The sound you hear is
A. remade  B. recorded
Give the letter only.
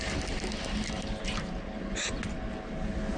B